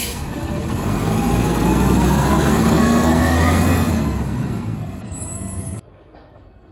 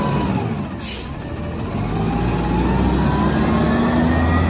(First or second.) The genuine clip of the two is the second